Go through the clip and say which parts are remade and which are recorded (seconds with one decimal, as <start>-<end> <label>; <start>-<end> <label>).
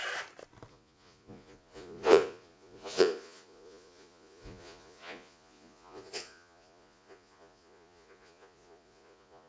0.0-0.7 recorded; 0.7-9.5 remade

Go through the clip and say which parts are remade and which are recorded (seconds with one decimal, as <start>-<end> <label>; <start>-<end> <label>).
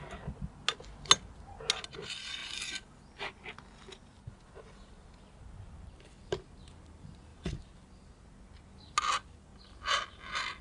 0.0-10.6 recorded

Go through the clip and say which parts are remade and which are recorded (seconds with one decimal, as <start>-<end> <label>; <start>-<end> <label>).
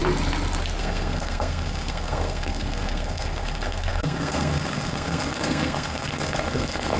0.0-0.8 recorded; 0.8-7.0 remade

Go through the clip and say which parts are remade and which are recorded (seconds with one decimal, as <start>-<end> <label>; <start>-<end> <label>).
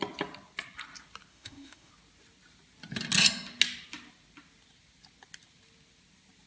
0.0-1.3 recorded; 1.3-1.9 remade; 1.9-6.5 recorded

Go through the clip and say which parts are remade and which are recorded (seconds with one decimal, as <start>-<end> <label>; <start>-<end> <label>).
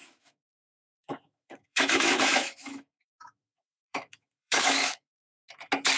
0.0-5.2 remade; 5.2-6.0 recorded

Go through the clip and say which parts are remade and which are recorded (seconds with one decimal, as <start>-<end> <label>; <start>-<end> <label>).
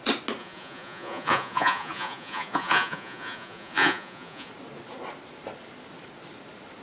0.0-0.4 recorded; 0.4-4.5 remade; 4.5-6.8 recorded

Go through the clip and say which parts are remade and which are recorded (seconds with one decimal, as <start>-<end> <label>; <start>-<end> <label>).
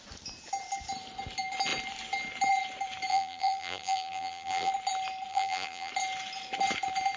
0.0-3.1 recorded; 3.1-4.7 remade; 4.7-5.3 recorded; 5.3-5.9 remade; 5.9-7.2 recorded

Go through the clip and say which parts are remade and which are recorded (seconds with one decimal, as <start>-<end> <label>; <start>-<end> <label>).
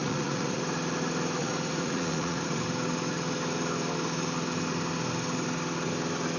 0.0-0.6 remade; 0.6-1.4 recorded; 1.4-2.6 remade; 2.6-6.4 recorded